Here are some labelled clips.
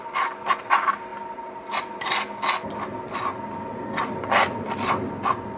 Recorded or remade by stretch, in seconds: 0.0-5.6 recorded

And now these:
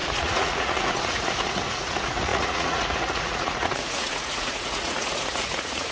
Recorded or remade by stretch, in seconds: 0.0-5.9 remade

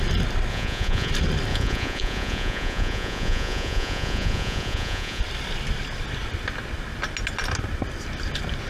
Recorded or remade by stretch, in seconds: 0.0-0.5 recorded; 0.5-1.1 remade; 1.1-1.5 recorded; 1.5-5.2 remade; 5.2-8.7 recorded

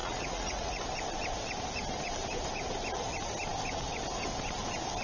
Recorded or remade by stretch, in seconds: 0.0-0.8 remade; 0.8-5.0 recorded

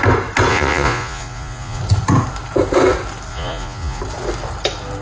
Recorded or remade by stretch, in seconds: 0.0-0.5 recorded; 0.5-1.8 remade; 1.8-3.3 recorded; 3.3-4.0 remade; 4.0-5.0 recorded

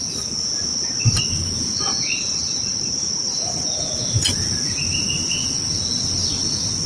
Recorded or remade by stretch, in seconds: 0.0-6.9 recorded

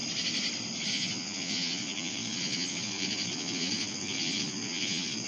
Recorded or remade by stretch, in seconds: 0.0-0.9 recorded; 0.9-5.3 remade